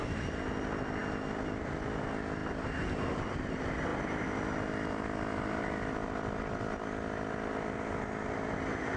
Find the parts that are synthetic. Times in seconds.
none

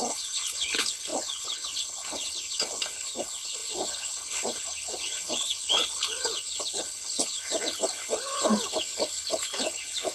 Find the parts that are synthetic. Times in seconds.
0.0-10.1 (codec, HILCodec)

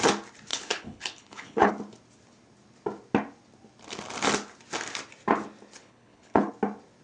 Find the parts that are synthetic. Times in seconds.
0.5-1.7 (codec, HILCodec); 5.8-6.5

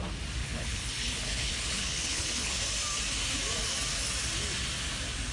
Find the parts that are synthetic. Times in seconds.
0.4-2.6 (codec, HILCodec)

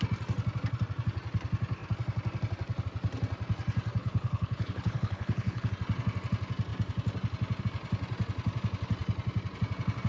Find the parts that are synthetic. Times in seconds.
4.0-5.7 (codec, HILCodec)

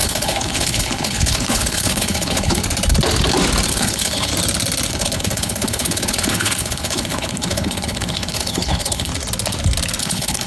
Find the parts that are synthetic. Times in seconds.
0.0-2.6 (codec, HILCodec); 3.7-4.3; 4.9-9.1; 10.0-10.5